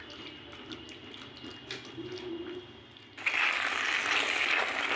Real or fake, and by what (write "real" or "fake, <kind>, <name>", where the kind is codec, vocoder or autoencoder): real